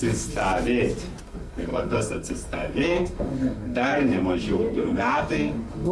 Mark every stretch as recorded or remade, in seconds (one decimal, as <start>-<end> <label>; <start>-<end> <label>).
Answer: 0.0-0.4 remade; 0.4-1.2 recorded; 1.2-5.9 remade